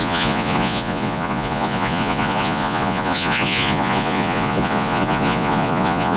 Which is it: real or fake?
fake